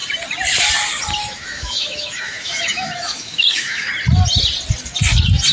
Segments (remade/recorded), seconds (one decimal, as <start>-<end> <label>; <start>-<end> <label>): 0.0-1.2 recorded; 1.2-3.9 remade; 3.9-5.5 recorded